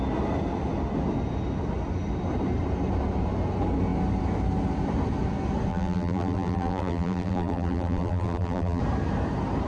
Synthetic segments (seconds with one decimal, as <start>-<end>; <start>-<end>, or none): 5.7-8.8